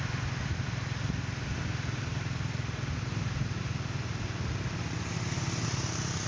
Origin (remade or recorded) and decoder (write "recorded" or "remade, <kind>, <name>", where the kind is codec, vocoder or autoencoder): recorded